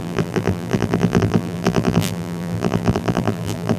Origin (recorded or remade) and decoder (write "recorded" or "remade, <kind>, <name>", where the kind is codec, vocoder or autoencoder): remade, vocoder, BigVGAN v2